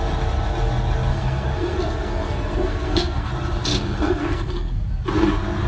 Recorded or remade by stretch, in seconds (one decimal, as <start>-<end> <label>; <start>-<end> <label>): 0.0-1.1 recorded; 1.1-3.3 remade; 3.3-3.7 recorded; 3.7-4.8 remade; 4.8-5.7 recorded